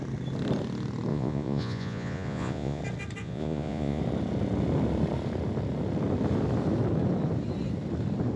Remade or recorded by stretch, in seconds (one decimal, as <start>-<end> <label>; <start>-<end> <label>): 0.0-1.1 recorded; 1.1-2.8 remade; 2.8-3.2 recorded; 3.2-4.0 remade; 4.0-8.4 recorded